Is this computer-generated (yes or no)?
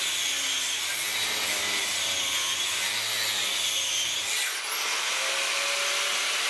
no